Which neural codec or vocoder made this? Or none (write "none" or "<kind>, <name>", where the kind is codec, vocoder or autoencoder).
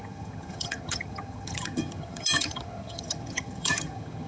vocoder, HiFi-GAN